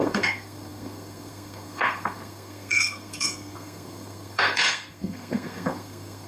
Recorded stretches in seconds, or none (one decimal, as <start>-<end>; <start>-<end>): none